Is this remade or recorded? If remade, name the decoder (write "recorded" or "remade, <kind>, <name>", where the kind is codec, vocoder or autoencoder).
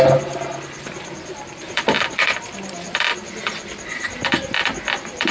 remade, vocoder, BigVGAN v2